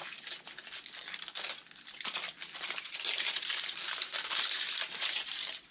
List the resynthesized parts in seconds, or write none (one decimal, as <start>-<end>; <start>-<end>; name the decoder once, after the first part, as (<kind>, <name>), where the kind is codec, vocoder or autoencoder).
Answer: 2.7-5.7 (vocoder, BigVGAN v2)